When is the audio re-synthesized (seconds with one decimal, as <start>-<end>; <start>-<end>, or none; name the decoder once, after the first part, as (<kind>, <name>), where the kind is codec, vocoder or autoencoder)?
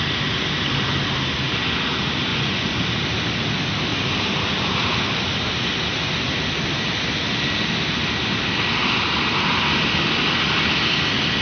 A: 2.3-2.8 (vocoder, Vocos)